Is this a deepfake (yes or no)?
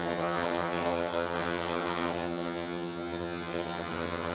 yes